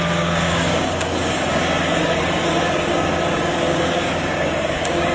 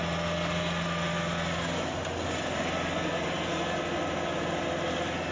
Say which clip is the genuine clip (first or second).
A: second